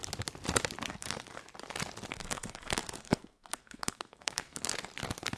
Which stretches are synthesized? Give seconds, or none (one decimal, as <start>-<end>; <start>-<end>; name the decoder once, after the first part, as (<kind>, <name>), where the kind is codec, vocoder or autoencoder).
0.9-1.4 (codec, SNAC); 2.1-4.7